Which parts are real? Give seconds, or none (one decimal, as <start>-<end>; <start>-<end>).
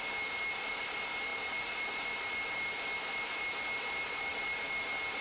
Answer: 0.0-5.2